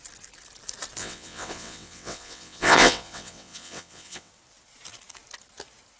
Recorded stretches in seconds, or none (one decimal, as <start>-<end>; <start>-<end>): 0.0-1.0; 4.3-6.0